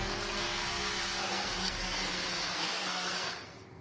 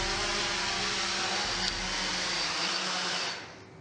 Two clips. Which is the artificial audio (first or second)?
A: first